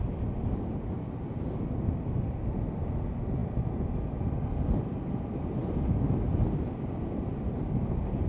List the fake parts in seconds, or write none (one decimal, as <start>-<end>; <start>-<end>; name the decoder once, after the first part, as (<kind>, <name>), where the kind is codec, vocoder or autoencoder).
none